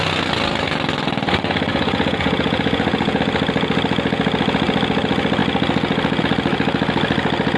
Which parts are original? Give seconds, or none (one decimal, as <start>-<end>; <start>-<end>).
0.0-1.7; 3.2-7.6